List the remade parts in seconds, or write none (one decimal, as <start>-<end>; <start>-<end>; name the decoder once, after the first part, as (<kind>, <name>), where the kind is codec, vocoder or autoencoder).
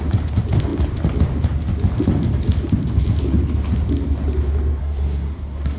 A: 4.8-5.8 (codec, SNAC)